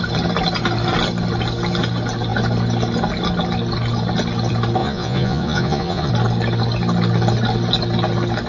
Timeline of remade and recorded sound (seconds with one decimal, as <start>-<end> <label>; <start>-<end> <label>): 0.0-4.8 recorded; 4.8-6.1 remade; 6.1-8.5 recorded